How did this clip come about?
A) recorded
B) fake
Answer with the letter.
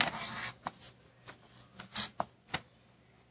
A